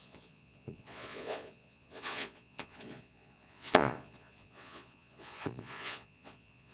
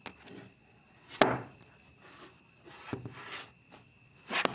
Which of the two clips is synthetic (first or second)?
first